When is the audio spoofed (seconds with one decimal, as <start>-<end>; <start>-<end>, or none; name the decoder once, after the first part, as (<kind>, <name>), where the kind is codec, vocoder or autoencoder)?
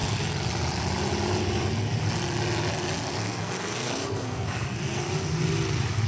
3.1-5.0 (codec, SNAC)